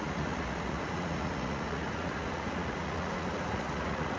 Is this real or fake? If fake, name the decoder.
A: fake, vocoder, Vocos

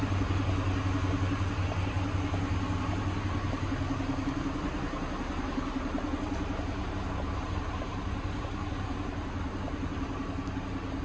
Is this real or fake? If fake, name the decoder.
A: real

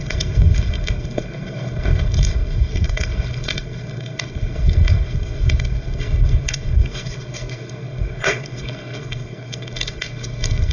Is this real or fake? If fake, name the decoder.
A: fake, codec, SNAC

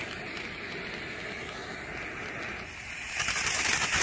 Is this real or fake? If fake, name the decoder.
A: real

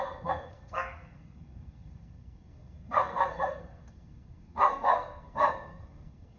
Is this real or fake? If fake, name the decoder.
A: fake, codec, SNAC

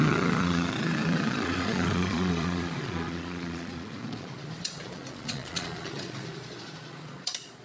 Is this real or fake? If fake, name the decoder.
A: fake, vocoder, Vocos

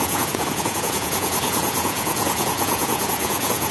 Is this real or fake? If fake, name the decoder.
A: fake, vocoder, Vocos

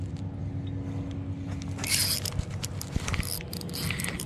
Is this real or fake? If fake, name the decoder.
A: real